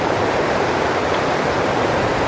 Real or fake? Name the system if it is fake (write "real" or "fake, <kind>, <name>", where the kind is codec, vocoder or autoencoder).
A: fake, vocoder, BigVGAN v2